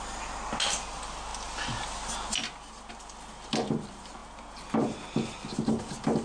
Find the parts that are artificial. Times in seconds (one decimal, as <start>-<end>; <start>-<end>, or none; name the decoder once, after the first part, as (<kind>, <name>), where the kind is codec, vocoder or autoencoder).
none

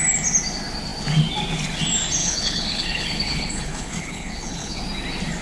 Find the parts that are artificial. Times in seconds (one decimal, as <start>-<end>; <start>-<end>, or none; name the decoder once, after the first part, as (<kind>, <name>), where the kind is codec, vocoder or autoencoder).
2.2-4.8 (codec, HILCodec)

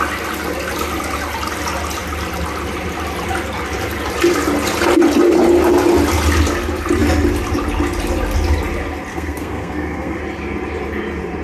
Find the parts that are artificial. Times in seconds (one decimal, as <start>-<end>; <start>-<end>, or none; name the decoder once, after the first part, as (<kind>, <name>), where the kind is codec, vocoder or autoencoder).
9.1-10.2 (codec, SNAC)

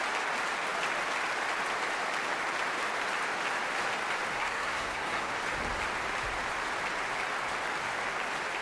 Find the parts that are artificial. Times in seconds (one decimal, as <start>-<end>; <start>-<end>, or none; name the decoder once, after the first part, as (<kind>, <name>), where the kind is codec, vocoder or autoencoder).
4.4-5.3 (codec, SNAC)

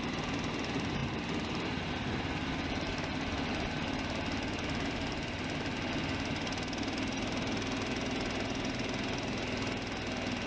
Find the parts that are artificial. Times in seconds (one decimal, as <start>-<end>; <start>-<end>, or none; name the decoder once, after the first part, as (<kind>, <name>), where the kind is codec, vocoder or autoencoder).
1.0-1.9 (vocoder, BigVGAN v2)

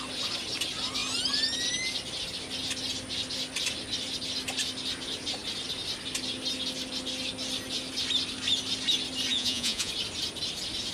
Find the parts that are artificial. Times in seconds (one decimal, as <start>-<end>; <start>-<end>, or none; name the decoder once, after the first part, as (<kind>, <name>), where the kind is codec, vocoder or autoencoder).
9.3-9.9 (vocoder, Vocos)

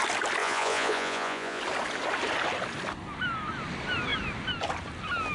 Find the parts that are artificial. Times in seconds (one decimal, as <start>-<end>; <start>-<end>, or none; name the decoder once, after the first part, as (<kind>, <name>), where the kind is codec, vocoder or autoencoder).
0.4-1.6 (vocoder, Vocos)